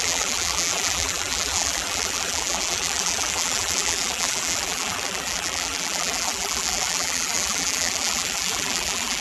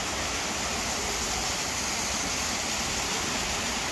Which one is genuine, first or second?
second